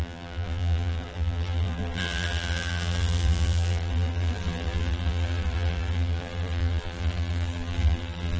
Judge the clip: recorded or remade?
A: remade